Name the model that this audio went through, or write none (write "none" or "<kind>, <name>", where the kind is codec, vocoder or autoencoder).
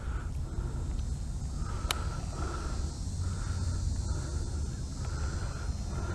none